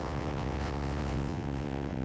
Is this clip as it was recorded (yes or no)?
no